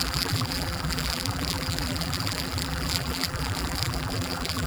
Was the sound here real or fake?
fake